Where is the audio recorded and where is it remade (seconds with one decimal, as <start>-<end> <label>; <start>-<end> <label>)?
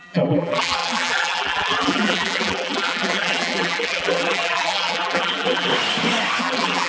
0.0-5.7 remade; 5.7-6.4 recorded; 6.4-6.9 remade